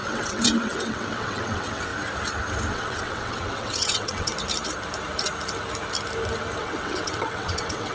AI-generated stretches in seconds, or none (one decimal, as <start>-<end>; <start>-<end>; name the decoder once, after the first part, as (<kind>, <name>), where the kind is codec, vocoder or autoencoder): 0.0-1.9 (vocoder, WaveNeXt); 2.7-4.3; 6.6-7.9